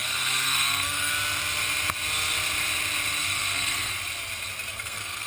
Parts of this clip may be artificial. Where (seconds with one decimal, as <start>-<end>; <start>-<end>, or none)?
0.0-1.1; 3.2-3.9; 4.7-5.3